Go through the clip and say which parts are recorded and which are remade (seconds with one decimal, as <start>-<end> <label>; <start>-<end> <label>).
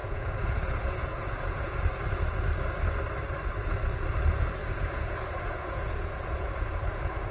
0.0-1.8 remade; 1.8-4.6 recorded; 4.6-7.3 remade